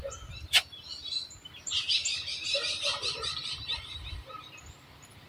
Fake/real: fake